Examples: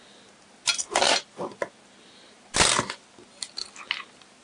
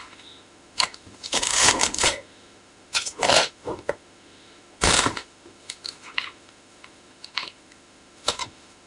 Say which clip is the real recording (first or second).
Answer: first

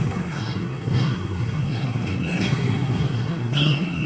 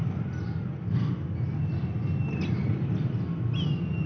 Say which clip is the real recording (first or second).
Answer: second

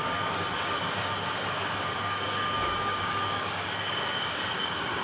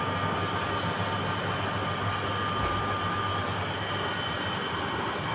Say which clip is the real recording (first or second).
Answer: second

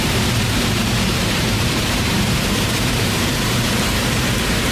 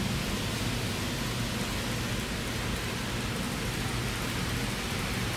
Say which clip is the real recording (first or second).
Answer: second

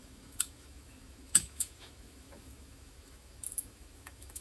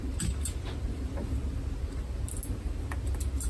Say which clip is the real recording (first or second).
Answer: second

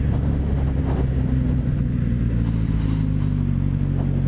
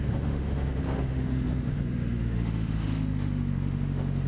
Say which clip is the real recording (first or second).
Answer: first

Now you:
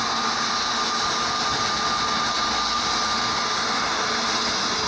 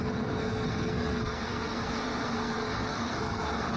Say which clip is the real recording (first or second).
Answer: first